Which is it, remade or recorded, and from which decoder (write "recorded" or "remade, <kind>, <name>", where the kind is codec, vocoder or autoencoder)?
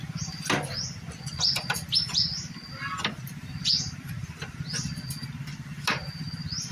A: recorded